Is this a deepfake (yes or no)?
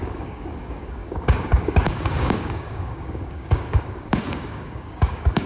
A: yes